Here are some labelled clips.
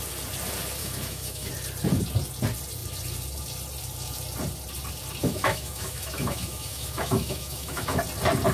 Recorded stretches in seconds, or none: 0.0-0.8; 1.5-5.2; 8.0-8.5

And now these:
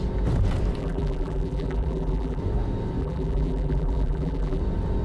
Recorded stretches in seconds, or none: 0.0-0.8; 2.4-3.0; 4.6-5.0

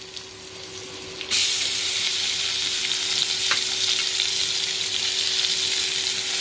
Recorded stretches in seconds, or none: 0.0-1.4; 2.8-6.4

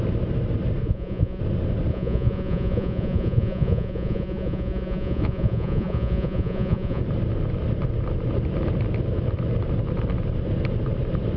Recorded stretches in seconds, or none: 0.0-0.8; 1.4-1.9; 7.0-11.4

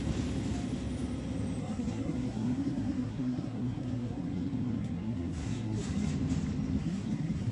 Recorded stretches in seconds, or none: 0.0-1.6; 6.1-6.8

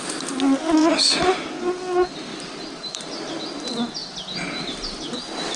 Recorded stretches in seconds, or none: 0.0-0.8; 1.5-2.3; 3.2-5.6

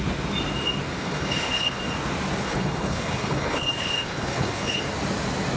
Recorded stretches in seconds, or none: 0.0-0.9; 1.8-2.4; 4.8-5.6